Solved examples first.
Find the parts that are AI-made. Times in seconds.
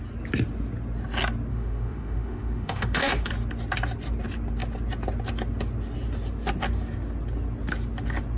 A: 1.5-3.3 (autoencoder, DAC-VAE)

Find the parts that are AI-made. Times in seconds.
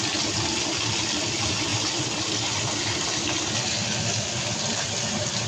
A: none